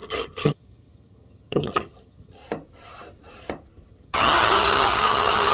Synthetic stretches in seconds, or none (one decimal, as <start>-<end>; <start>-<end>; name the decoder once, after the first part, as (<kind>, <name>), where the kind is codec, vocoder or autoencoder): 0.0-2.4 (vocoder, HiFi-GAN); 3.9-5.5